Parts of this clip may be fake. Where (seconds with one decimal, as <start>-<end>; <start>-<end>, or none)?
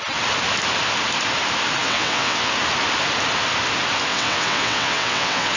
1.8-2.5; 4.1-5.6